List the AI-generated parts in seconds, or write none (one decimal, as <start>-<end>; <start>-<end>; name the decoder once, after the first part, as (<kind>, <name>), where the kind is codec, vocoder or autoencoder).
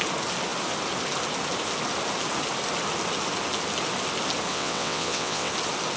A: 4.5-5.5 (vocoder, WaveNeXt)